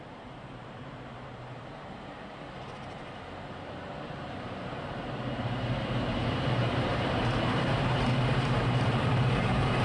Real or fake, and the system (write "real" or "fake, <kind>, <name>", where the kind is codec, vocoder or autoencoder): fake, vocoder, BigVGAN v2